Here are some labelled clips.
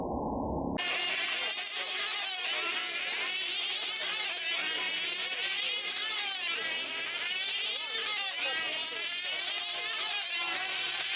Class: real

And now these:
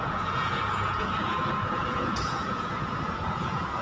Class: fake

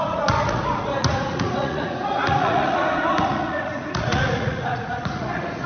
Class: fake